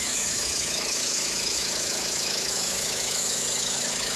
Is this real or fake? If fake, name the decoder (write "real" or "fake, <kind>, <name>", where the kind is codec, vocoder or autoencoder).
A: fake, autoencoder, DAC-VAE